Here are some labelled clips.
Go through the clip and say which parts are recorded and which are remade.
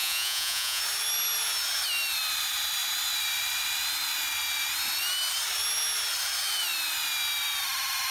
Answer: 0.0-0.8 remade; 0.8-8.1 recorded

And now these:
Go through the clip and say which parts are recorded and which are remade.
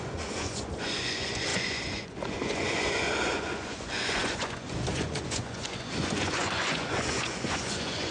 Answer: 0.0-8.1 remade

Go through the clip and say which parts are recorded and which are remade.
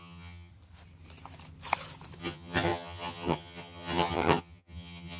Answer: 0.0-0.5 remade; 0.5-2.2 recorded; 2.2-5.2 remade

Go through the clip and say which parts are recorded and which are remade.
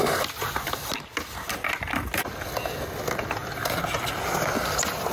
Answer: 0.0-5.1 recorded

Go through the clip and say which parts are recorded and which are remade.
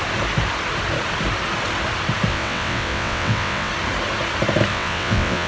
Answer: 0.0-2.3 recorded; 2.3-3.7 remade; 3.7-4.7 recorded; 4.7-5.5 remade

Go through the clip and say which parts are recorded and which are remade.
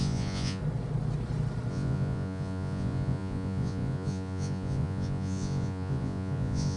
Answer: 0.0-0.6 remade; 0.6-1.7 recorded; 1.7-6.8 remade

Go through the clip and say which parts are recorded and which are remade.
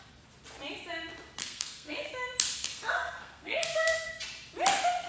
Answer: 0.0-1.4 recorded; 1.4-2.1 remade; 2.1-2.6 recorded; 2.6-4.1 remade; 4.1-5.1 recorded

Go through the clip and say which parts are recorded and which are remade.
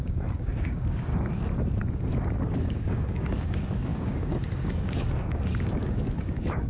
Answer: 0.0-1.1 remade; 1.1-2.7 recorded; 2.7-6.7 remade